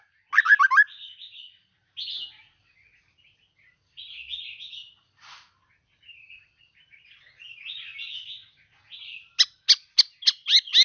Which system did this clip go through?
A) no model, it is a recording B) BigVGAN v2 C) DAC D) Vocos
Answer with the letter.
A